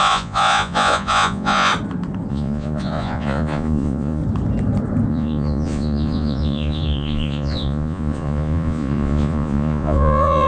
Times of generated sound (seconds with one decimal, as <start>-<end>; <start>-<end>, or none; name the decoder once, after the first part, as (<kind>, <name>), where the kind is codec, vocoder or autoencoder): 0.0-1.7 (vocoder, Vocos); 2.3-4.2; 5.1-10.5